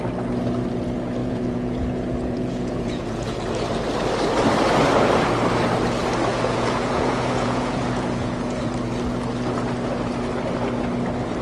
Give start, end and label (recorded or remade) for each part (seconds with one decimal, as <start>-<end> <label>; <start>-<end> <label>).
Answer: 0.0-1.2 recorded; 1.2-3.4 remade; 3.4-6.3 recorded; 6.3-8.8 remade; 8.8-11.4 recorded